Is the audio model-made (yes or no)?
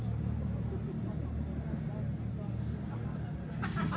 no